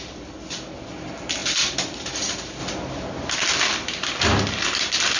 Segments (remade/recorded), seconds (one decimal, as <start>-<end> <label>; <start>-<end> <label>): 0.0-5.2 recorded